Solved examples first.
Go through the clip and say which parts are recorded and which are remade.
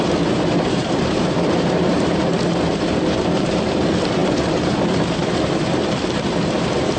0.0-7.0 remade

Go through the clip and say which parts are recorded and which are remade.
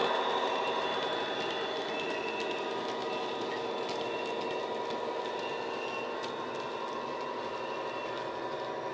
0.0-8.9 recorded